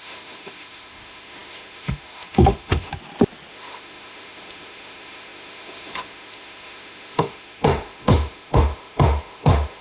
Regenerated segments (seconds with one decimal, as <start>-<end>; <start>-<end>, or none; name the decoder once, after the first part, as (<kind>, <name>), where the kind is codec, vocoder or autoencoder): 0.0-2.9 (autoencoder, DAC-VAE); 3.5-9.8